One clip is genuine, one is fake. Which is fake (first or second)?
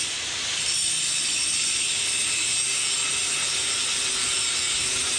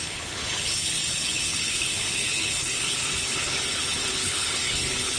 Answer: second